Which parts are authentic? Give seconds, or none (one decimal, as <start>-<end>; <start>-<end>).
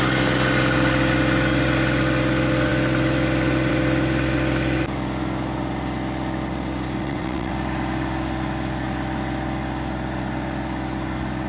0.0-7.0; 7.5-11.5